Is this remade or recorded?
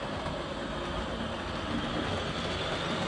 recorded